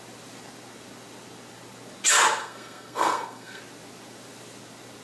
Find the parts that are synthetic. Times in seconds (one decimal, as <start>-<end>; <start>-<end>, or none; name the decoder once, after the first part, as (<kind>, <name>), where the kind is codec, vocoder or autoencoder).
2.4-3.6 (codec, SNAC)